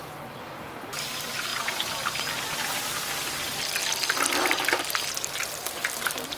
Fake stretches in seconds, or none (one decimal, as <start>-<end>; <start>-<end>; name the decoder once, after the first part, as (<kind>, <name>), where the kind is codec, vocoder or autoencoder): none